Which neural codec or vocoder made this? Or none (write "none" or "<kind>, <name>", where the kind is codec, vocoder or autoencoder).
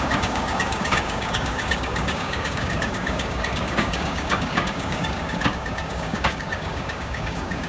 codec, DAC